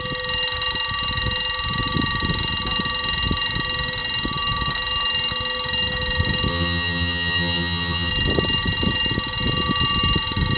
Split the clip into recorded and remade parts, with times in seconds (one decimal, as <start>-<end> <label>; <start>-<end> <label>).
0.0-6.5 recorded; 6.5-8.1 remade; 8.1-10.6 recorded